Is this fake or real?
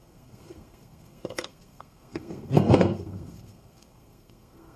fake